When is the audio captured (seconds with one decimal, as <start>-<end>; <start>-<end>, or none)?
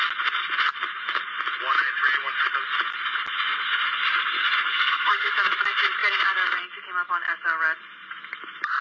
0.0-4.7; 5.3-8.8